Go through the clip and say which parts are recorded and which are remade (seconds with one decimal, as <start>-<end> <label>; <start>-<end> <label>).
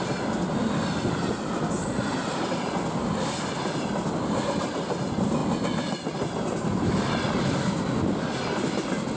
0.0-9.2 recorded